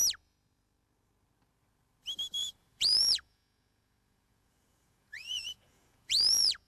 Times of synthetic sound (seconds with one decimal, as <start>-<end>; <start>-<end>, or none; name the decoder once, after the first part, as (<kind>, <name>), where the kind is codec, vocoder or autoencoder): 2.4-6.7 (vocoder, Vocos)